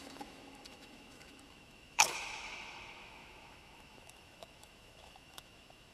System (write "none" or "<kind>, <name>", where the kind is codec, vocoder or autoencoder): autoencoder, DAC-VAE